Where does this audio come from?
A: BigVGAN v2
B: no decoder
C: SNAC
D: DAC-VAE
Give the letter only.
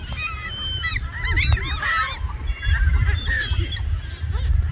B